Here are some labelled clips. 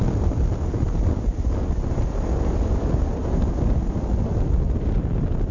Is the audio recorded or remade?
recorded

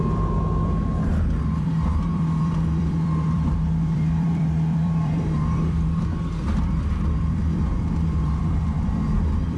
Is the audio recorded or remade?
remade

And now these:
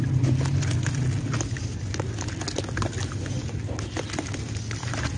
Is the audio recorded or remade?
recorded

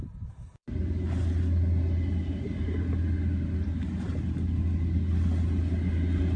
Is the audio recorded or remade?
recorded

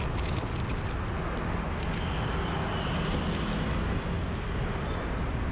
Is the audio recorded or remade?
recorded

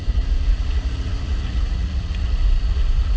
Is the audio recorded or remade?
remade